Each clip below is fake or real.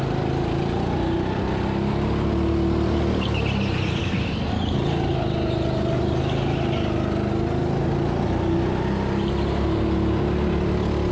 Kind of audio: real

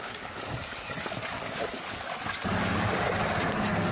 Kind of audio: fake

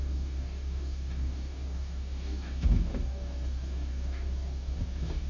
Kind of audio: fake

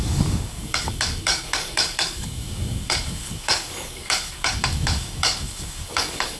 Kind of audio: fake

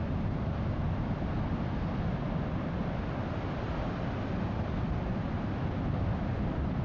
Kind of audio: real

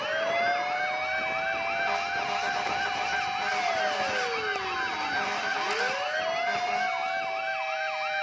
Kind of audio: real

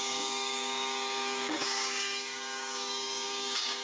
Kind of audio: fake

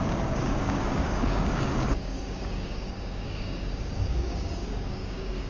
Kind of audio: fake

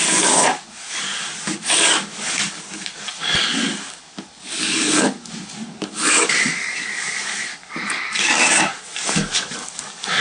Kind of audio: fake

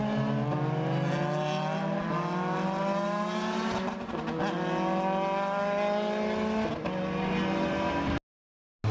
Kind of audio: real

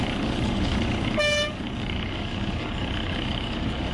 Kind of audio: fake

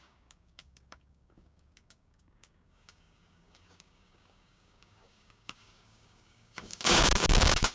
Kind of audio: fake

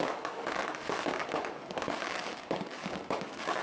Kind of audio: fake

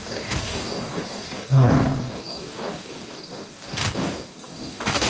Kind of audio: fake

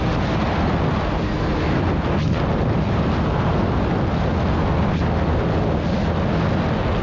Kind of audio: real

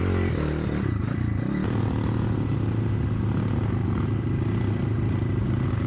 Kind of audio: real